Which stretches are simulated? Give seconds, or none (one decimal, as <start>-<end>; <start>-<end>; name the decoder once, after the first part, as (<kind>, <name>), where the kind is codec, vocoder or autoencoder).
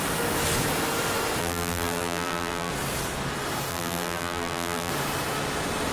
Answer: 1.4-2.7 (vocoder, BigVGAN v2); 3.7-4.9